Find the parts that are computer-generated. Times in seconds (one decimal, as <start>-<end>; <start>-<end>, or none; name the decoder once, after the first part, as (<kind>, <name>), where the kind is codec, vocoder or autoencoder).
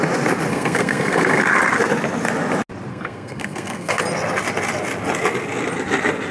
0.5-1.4 (codec, SNAC); 2.9-4.0